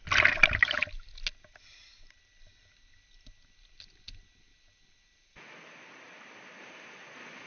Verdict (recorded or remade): recorded